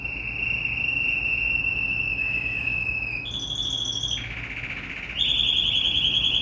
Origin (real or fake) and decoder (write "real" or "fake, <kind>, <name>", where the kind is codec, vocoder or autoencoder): real